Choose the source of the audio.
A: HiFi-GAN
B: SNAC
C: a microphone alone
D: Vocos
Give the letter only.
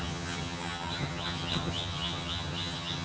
A